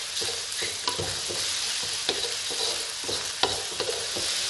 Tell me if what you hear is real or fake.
real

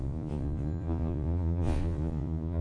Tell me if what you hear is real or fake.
fake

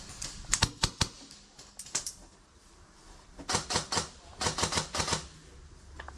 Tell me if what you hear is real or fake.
real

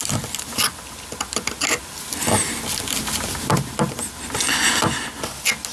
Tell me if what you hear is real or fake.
real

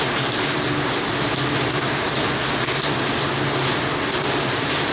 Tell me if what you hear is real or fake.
real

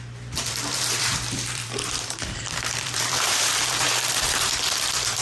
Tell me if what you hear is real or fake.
fake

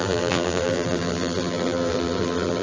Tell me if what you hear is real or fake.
fake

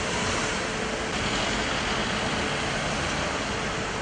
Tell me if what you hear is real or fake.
real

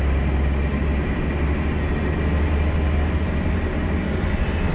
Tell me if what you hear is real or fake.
real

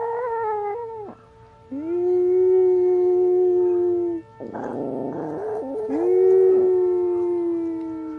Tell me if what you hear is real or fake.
real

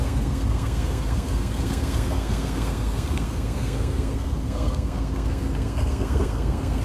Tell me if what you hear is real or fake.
fake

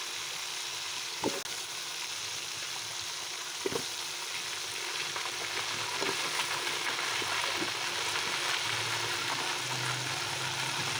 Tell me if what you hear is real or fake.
real